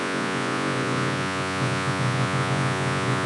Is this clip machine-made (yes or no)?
yes